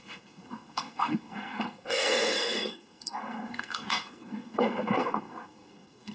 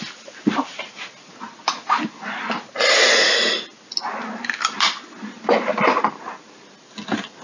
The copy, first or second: first